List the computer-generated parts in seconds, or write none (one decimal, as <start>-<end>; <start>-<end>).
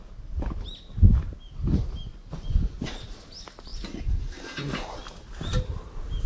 2.1-2.8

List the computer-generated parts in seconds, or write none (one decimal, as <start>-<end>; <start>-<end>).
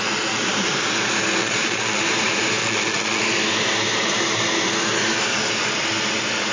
1.4-2.0; 2.6-3.2